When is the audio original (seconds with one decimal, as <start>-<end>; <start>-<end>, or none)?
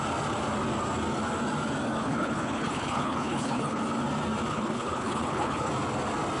0.0-2.0; 3.8-4.5; 5.7-6.4